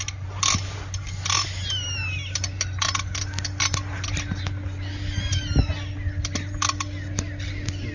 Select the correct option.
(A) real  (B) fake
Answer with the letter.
A